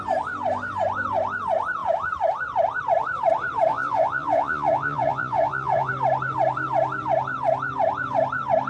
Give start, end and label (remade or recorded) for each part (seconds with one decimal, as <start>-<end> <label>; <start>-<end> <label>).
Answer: 0.0-3.7 recorded; 3.7-5.9 remade; 5.9-8.7 recorded